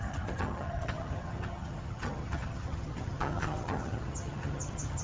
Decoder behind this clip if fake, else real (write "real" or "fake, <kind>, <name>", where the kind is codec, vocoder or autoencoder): fake, vocoder, HiFi-GAN